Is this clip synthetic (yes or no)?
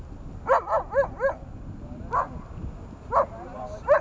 no